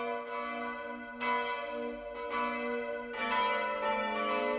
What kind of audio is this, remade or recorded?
recorded